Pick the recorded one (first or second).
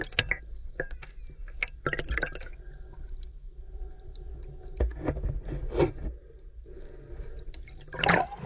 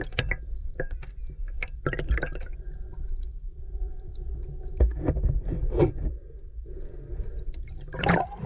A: first